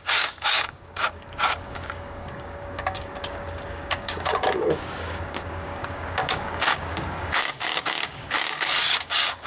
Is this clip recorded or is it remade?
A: remade